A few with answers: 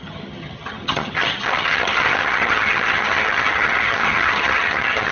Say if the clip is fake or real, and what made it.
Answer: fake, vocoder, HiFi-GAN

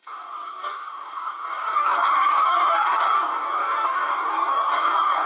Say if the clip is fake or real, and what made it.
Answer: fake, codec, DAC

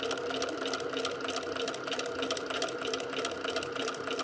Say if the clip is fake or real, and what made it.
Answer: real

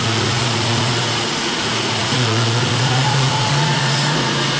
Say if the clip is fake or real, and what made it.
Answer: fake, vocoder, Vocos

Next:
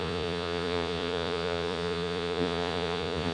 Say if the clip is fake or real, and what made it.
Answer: fake, vocoder, Vocos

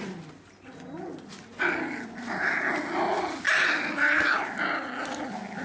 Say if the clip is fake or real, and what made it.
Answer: real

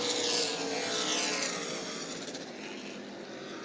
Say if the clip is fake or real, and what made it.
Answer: real